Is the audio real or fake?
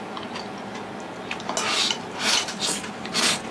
real